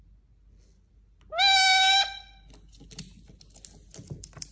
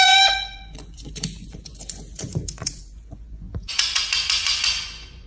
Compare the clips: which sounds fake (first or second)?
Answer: second